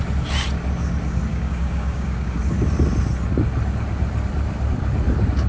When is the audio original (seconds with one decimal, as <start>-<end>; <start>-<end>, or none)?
0.0-1.3; 2.4-5.5